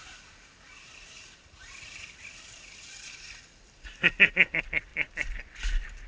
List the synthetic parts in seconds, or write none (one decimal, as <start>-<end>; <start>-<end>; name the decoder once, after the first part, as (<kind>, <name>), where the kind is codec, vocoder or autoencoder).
4.9-5.4 (vocoder, BigVGAN v2)